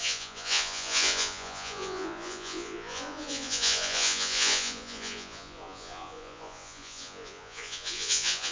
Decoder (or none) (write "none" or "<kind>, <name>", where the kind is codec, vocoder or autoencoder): vocoder, Vocos